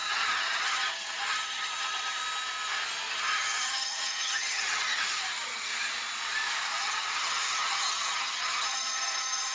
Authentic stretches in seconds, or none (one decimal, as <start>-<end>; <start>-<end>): 2.2-3.1; 5.7-6.8